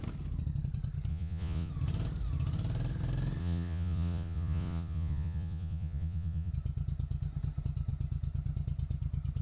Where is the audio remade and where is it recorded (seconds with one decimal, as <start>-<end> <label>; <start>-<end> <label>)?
0.0-1.1 recorded; 1.1-1.7 remade; 1.7-3.4 recorded; 3.4-6.5 remade; 6.5-9.4 recorded